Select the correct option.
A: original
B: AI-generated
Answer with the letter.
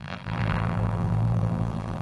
B